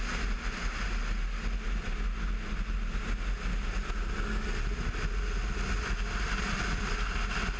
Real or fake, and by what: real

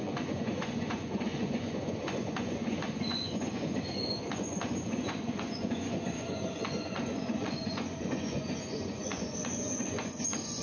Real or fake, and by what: fake, vocoder, Vocos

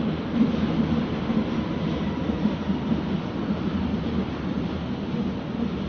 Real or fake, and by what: real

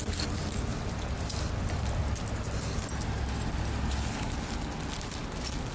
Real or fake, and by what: real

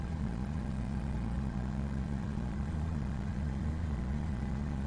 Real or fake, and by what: fake, vocoder, Vocos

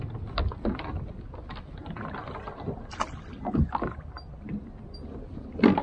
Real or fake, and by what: real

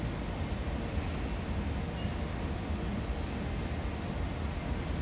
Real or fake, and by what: real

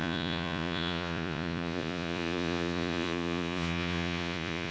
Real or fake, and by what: fake, vocoder, Vocos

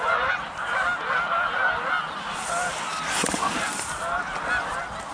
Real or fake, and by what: real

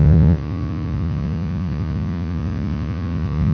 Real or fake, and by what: fake, vocoder, Vocos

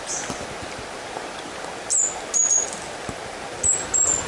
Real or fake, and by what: real